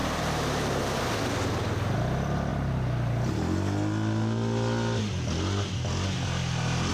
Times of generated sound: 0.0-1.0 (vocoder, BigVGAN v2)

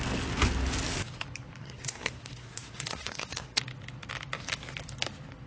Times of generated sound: 1.6-3.6 (codec, SNAC)

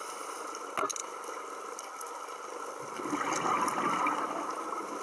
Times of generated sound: none

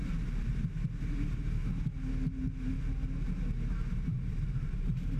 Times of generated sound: 0.0-0.5 (vocoder, BigVGAN v2); 1.0-1.6; 3.7-5.2

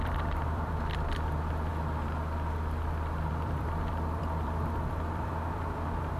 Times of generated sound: 0.0-1.7 (vocoder, BigVGAN v2); 3.3-6.2

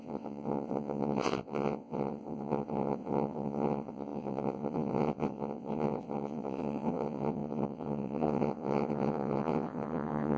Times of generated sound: 0.0-10.4 (vocoder, WaveNeXt)

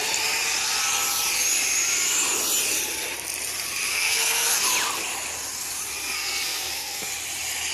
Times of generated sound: 3.9-4.5 (codec, SNAC); 6.0-7.1

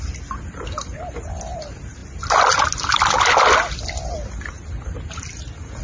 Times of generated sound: none